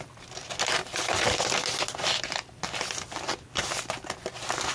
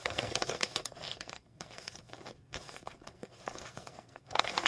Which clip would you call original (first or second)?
first